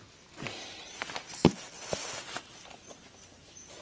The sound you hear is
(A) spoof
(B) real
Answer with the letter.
B